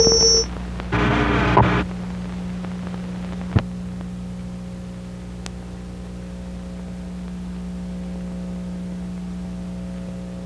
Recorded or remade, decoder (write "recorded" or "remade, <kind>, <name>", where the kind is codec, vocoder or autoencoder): recorded